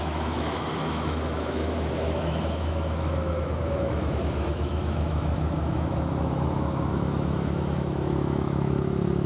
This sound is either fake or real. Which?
fake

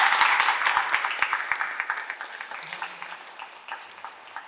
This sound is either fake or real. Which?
real